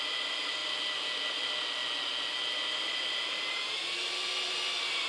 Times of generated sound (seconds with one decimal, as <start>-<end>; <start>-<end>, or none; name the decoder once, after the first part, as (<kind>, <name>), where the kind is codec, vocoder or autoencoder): none